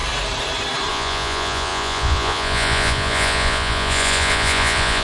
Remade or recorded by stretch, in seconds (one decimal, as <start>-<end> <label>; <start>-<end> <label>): 0.0-0.9 recorded; 0.9-5.0 remade